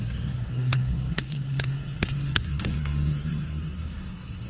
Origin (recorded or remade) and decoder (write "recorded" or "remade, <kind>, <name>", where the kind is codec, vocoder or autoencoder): remade, codec, SNAC